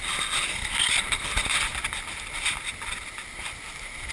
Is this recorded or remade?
recorded